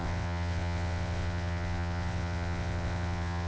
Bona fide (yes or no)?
no